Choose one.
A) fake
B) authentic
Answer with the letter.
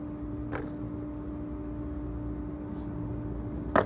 B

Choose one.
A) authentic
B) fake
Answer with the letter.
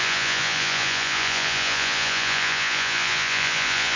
B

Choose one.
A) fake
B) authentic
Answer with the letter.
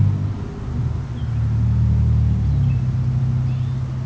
B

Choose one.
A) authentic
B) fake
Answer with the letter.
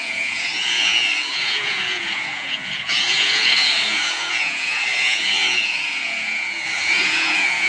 B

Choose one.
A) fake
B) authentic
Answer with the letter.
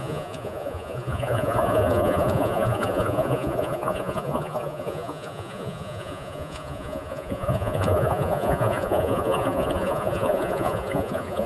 A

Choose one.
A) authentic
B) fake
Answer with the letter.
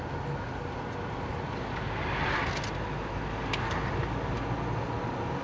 A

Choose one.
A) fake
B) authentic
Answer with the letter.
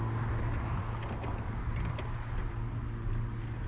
B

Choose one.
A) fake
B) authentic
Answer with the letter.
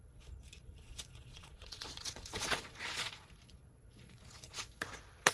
A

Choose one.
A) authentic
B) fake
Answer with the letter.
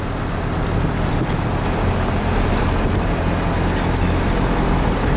A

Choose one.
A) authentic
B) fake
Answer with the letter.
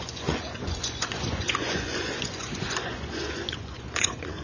B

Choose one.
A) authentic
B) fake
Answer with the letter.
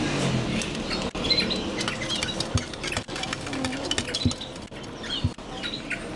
A